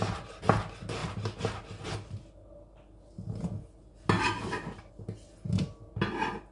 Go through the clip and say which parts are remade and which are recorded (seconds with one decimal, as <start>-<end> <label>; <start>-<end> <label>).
0.0-6.5 recorded